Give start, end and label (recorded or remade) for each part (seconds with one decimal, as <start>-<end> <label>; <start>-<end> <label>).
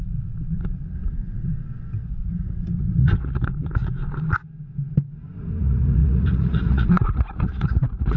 0.0-1.5 remade; 1.5-2.1 recorded; 2.1-3.9 remade; 3.9-5.6 recorded; 5.6-8.2 remade